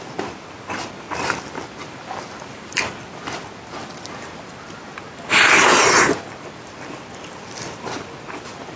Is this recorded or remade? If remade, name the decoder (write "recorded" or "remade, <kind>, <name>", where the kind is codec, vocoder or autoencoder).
remade, vocoder, BigVGAN v2